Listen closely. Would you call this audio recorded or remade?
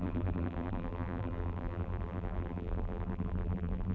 remade